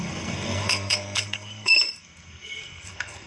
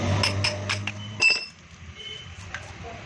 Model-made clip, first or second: first